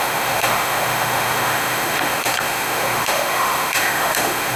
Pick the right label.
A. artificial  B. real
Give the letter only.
A